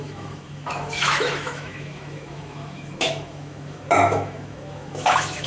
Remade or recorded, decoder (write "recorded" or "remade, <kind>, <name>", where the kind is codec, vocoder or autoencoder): remade, autoencoder, DAC-VAE